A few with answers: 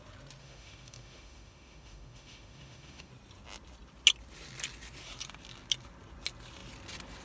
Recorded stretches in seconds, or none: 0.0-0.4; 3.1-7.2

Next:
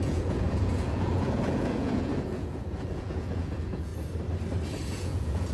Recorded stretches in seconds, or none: 3.9-4.9

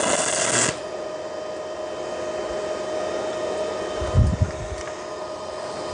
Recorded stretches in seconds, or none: 0.0-5.9

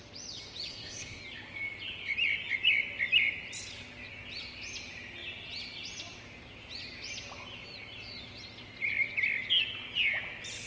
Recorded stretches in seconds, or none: 0.0-0.7; 1.2-10.7

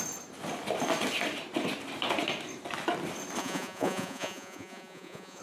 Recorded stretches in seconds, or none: 0.0-3.4